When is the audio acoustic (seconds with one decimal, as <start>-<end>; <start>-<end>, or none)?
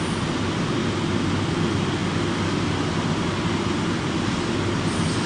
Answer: 0.0-5.3